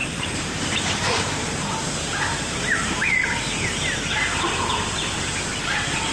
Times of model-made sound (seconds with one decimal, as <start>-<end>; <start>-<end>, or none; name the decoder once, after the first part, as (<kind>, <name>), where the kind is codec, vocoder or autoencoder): 0.0-1.8 (vocoder, BigVGAN v2); 2.7-3.2; 5.6-6.1